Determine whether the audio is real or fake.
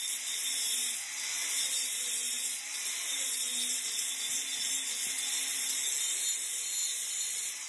real